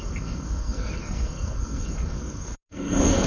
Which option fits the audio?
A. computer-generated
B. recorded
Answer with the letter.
A